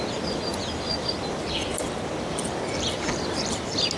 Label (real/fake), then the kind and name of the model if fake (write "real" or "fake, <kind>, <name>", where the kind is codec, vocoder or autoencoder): real